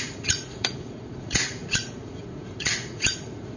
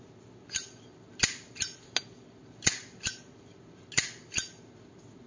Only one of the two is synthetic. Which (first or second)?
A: first